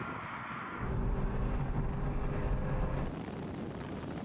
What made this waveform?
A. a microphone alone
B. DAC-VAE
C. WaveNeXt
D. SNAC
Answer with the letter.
A